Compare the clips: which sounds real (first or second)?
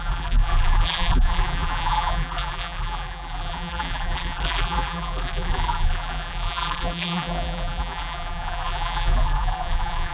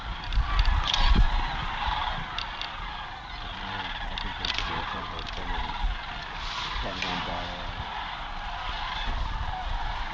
second